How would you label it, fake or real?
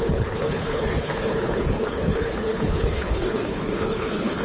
fake